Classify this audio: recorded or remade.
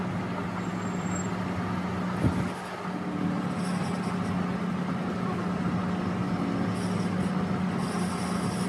recorded